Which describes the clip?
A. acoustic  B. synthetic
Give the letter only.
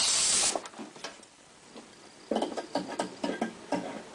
A